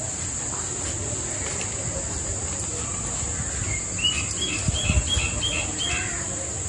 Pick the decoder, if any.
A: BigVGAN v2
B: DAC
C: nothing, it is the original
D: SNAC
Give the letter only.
C